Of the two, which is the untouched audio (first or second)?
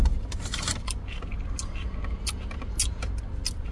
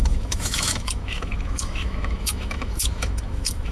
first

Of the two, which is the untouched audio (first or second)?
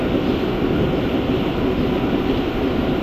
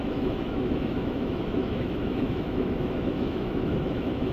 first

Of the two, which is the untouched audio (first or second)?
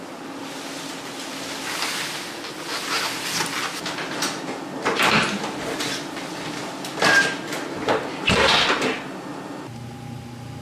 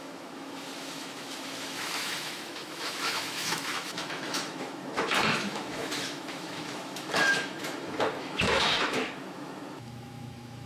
first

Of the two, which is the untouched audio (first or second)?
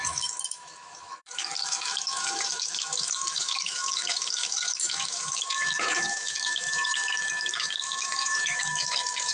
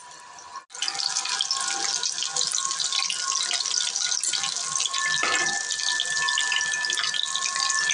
second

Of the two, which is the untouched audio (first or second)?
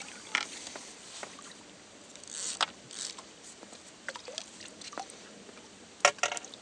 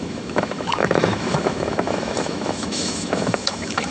first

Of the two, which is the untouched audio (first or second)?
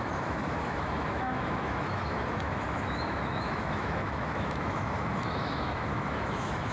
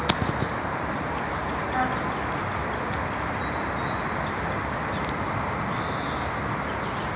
second